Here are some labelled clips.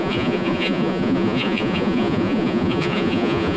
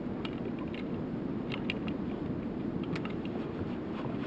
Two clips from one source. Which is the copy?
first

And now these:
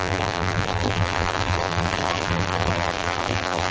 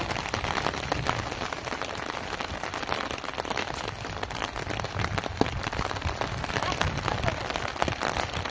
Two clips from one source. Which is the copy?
first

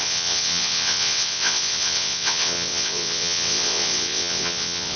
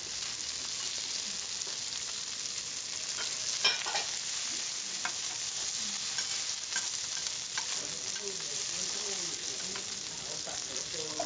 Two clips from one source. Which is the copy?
first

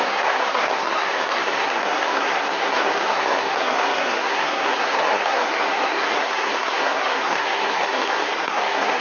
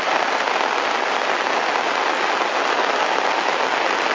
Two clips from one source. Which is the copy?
first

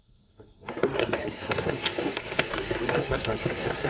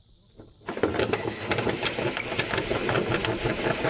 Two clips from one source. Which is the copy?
first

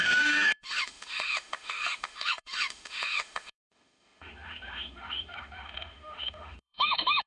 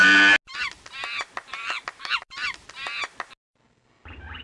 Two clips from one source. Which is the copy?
first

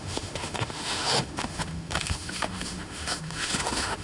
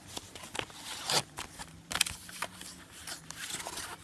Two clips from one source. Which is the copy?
first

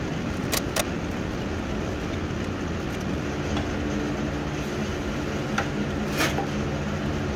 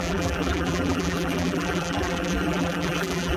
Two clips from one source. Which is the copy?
second